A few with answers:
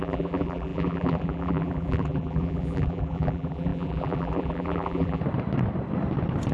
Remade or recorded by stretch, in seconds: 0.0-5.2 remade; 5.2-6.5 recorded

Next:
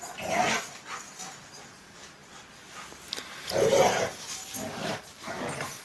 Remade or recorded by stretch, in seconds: 0.0-0.4 remade; 0.4-1.6 recorded; 1.6-5.8 remade

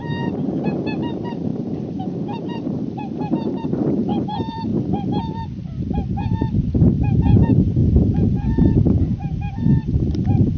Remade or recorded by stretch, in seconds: 0.0-1.5 remade; 1.5-2.4 recorded; 2.4-4.7 remade; 4.7-5.9 recorded; 5.9-7.8 remade; 7.8-8.5 recorded; 8.5-10.6 remade

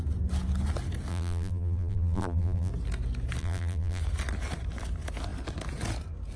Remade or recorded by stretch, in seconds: 0.0-1.1 recorded; 1.1-2.7 remade; 2.7-3.4 recorded; 3.4-4.0 remade; 4.0-6.4 recorded

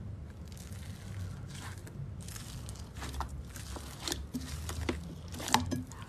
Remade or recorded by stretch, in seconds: 0.0-1.8 recorded; 1.8-3.4 remade; 3.4-4.2 recorded; 4.2-6.1 remade

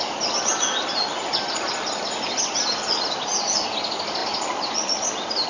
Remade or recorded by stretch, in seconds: 0.0-0.5 recorded; 0.5-2.6 remade; 2.6-5.5 recorded

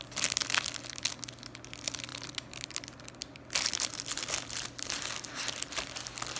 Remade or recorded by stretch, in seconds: 0.0-6.4 recorded

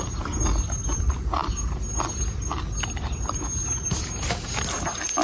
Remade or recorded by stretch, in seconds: 0.0-5.2 recorded